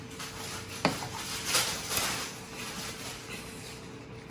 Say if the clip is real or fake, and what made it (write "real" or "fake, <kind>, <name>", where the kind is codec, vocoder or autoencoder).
real